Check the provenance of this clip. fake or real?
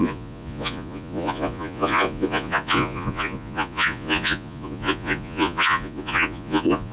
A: fake